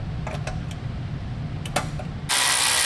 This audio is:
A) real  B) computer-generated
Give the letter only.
A